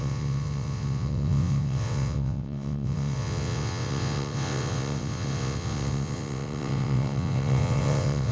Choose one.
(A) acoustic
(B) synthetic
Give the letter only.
B